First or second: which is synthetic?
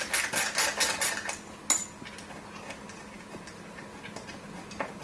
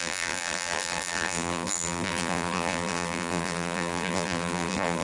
second